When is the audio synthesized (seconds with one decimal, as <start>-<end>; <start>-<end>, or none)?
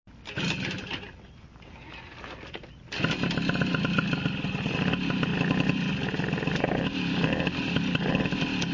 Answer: none